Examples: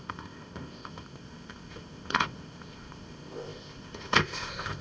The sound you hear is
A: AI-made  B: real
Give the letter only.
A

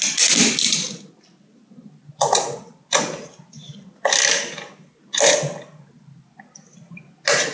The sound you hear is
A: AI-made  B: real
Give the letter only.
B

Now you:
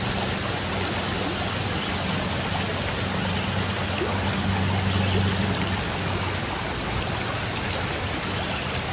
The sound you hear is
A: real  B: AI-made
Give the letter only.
A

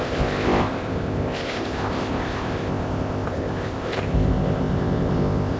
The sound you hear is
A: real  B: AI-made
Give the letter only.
B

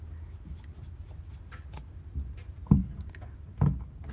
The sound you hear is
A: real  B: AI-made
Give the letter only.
A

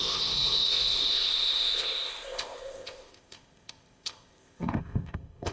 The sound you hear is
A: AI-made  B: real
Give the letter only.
A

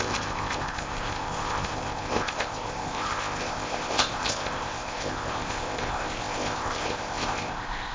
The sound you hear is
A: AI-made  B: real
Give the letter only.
A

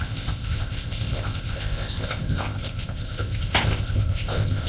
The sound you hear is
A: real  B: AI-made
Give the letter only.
B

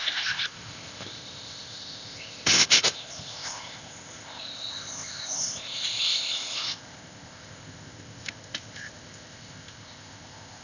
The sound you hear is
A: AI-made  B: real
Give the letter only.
A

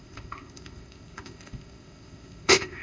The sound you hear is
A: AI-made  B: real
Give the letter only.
A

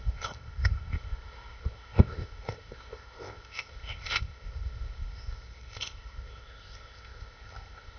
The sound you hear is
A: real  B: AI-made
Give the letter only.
B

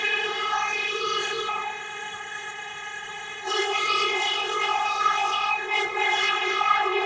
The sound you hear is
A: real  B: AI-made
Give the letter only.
B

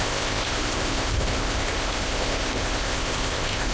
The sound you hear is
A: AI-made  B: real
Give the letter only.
A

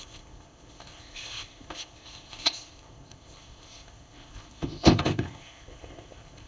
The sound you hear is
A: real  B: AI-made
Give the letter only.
B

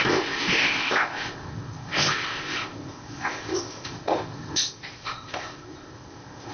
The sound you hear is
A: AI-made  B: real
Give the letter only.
A